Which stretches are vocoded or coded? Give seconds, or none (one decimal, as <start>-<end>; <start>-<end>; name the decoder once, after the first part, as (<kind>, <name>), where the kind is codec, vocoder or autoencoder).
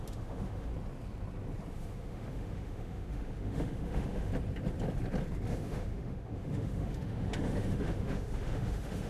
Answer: 0.0-0.7 (autoencoder, DAC-VAE); 1.7-4.3; 5.5-9.1